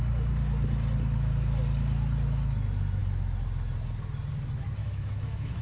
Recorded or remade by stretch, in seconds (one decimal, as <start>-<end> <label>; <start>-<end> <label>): 0.0-4.8 recorded; 4.8-5.6 remade